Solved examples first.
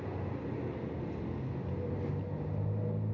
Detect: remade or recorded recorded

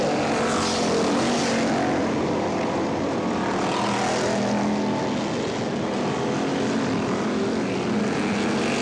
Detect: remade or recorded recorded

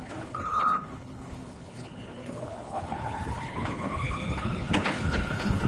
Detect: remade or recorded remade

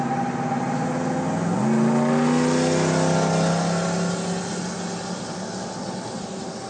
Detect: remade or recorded recorded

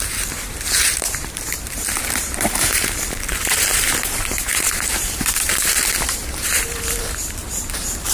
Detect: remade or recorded remade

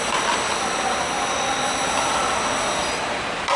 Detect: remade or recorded recorded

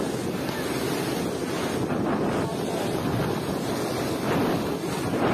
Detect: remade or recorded recorded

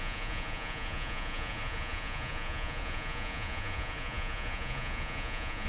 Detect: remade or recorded remade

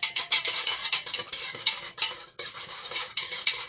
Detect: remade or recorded remade